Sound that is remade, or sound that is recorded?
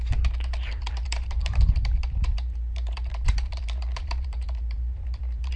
remade